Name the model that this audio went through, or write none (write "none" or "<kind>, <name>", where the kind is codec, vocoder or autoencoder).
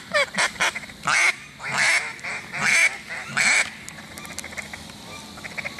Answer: none